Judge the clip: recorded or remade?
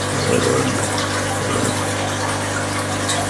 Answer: recorded